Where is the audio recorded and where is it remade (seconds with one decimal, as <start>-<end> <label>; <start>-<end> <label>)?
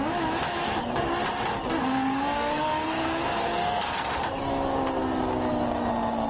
0.0-1.8 recorded; 1.8-4.1 remade; 4.1-6.3 recorded